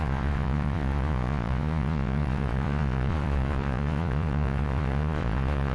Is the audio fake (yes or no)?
yes